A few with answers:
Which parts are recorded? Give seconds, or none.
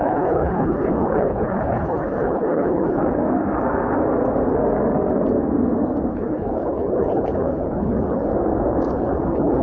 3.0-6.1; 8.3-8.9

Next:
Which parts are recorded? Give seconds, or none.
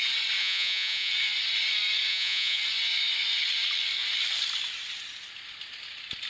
0.0-0.4; 1.1-2.1; 2.6-6.3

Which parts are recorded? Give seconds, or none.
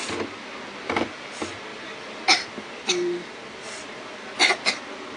0.0-5.2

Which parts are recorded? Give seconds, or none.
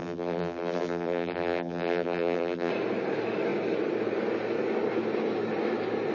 2.7-6.1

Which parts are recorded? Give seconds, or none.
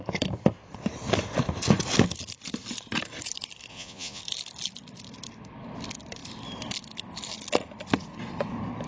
0.0-3.7; 4.2-8.9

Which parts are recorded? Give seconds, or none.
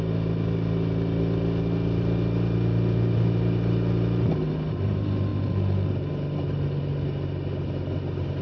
0.0-8.4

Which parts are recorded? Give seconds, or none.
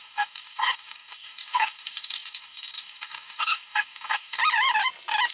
4.4-5.3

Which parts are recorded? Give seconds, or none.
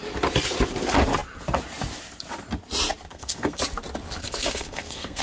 0.0-3.1; 3.6-4.2